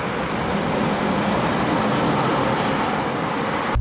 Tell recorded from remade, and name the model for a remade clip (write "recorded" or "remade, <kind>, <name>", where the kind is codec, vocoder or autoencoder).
recorded